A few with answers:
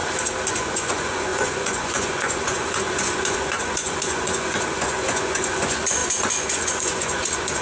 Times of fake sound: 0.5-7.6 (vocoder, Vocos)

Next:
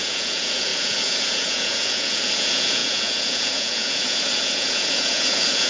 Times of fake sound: 0.0-5.7 (vocoder, Vocos)

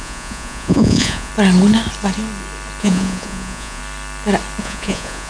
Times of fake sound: 0.0-1.3 (vocoder, Vocos); 2.8-3.8; 4.6-5.3

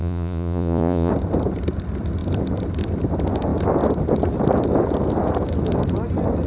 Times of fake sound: 0.0-1.1 (vocoder, Vocos)

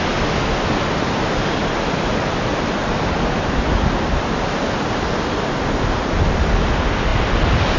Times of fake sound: none

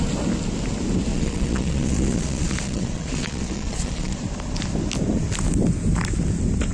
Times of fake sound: 1.1-4.2 (vocoder, Vocos)

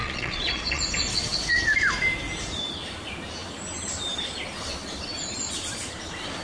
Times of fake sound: 0.0-0.8 (vocoder, Vocos)

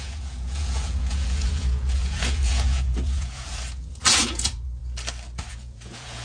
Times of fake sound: 0.0-4.8 (vocoder, Vocos); 5.5-6.2